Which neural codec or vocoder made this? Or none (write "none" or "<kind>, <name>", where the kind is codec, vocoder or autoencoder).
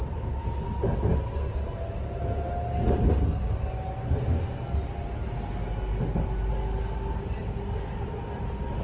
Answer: none